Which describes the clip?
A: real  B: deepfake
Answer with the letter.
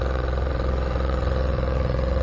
B